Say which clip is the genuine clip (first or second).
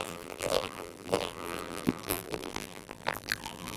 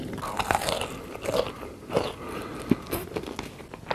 second